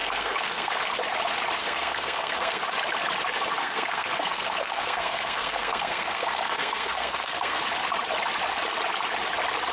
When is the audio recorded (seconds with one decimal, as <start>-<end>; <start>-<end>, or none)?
0.8-1.6; 2.6-3.6; 7.6-9.7